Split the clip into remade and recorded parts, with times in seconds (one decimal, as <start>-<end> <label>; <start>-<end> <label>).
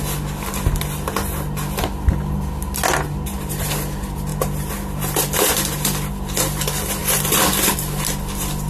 0.0-8.7 recorded